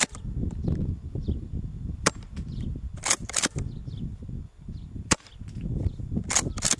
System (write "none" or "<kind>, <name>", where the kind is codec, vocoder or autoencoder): vocoder, BigVGAN v2